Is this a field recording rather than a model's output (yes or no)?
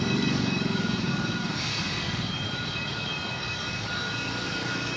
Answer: no